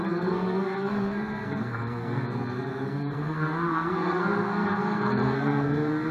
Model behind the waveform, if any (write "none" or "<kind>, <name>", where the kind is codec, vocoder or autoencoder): codec, SNAC